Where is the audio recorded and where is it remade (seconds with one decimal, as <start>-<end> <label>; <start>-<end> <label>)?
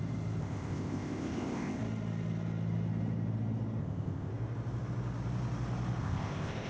0.0-0.4 recorded; 0.4-1.8 remade; 1.8-3.8 recorded; 3.8-4.3 remade; 4.3-6.0 recorded; 6.0-6.7 remade